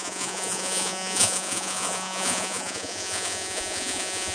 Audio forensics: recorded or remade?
remade